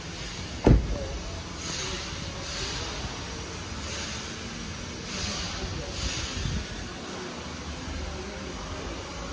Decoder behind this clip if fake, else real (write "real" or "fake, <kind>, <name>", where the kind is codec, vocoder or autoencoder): real